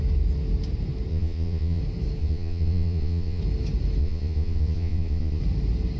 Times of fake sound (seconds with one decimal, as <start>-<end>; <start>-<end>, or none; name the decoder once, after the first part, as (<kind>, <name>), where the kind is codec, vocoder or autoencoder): 1.1-1.8 (vocoder, Vocos); 2.2-3.4; 4.0-5.4

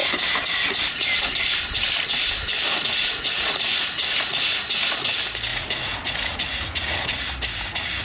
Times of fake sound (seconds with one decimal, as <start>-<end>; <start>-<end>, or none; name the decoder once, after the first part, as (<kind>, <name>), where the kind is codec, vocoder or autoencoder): 2.7-4.6 (vocoder, Vocos); 5.5-7.2

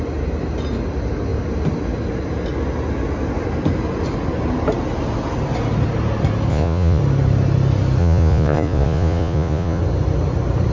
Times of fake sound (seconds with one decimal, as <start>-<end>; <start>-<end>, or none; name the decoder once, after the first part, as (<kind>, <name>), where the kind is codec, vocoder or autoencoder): 6.5-7.0 (vocoder, Vocos); 8.0-9.8

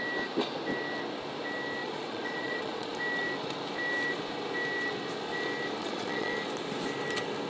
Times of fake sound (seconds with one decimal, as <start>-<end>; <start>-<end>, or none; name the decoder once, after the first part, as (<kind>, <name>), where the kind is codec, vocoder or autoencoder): 1.8-2.9 (vocoder, Vocos); 5.8-6.3

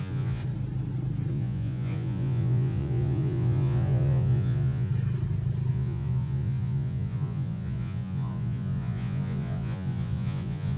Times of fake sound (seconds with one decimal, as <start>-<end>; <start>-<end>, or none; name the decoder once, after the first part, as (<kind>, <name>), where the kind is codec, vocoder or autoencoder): 0.0-0.4 (vocoder, Vocos); 1.3-4.9; 5.7-10.8

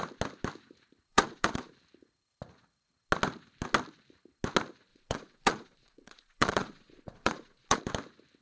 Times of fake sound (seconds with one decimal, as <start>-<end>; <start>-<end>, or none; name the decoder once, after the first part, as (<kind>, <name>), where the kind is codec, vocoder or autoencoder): 1.1-1.7 (vocoder, Vocos); 4.9-7.8

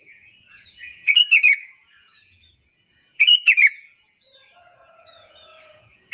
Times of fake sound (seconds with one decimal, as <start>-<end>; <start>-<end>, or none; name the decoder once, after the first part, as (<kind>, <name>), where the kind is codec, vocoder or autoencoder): 0.0-6.1 (vocoder, Vocos)